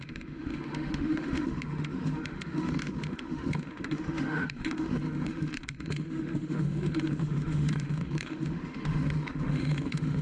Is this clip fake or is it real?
fake